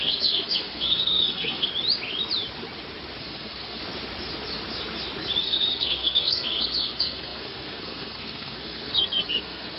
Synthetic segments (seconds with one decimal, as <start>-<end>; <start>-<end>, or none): 0.0-1.7; 3.2-3.8; 5.4-9.8